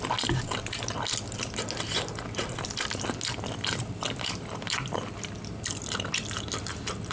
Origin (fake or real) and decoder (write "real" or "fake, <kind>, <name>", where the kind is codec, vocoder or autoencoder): real